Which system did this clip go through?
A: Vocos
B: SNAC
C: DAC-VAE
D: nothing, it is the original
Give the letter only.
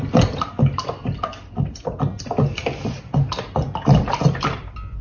D